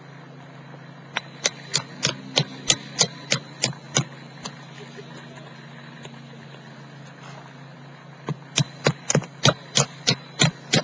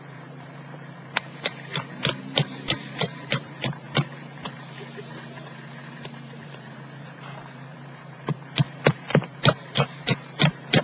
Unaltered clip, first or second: first